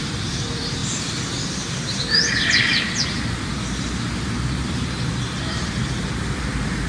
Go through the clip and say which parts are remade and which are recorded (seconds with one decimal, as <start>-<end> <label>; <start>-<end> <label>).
0.0-0.8 remade; 0.8-1.7 recorded; 1.7-6.9 remade